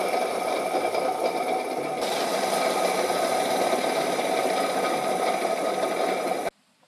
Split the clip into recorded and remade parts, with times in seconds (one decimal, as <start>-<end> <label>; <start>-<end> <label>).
0.0-6.9 recorded